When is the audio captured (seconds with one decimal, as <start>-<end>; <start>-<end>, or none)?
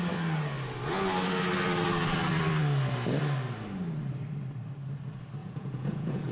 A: 0.0-5.4